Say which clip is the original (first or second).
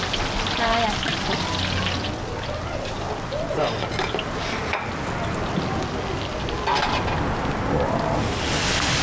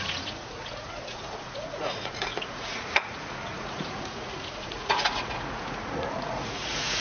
first